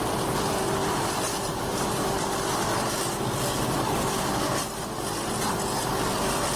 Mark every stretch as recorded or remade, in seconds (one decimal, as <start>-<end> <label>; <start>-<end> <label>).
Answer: 0.0-0.8 recorded; 0.8-2.1 remade; 2.1-6.6 recorded